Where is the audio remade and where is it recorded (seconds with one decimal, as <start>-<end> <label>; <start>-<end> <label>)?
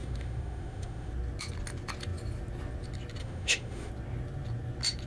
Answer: 0.0-1.1 remade; 1.1-3.2 recorded; 3.2-3.9 remade; 3.9-5.1 recorded